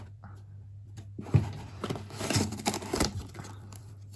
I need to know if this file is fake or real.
fake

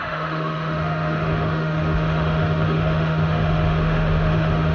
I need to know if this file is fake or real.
fake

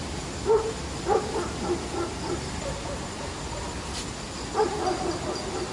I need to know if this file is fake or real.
real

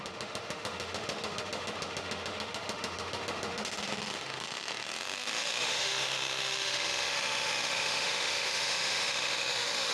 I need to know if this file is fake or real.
fake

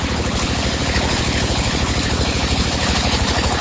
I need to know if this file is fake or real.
fake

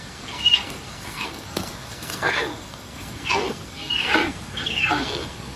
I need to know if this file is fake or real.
fake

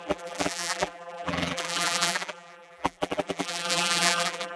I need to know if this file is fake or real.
fake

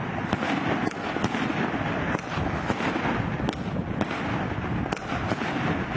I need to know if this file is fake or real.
real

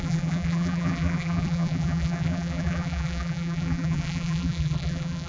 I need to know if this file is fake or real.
fake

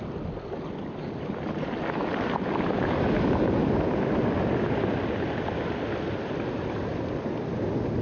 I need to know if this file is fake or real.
real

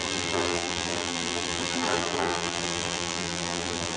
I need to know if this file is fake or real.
fake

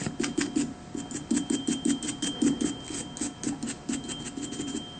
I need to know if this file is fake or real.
real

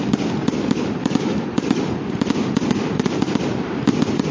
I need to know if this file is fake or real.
fake